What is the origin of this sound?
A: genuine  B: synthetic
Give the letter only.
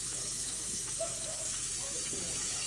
B